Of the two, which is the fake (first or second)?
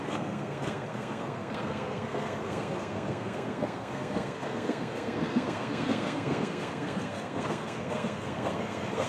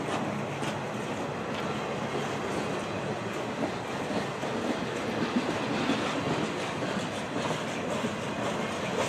first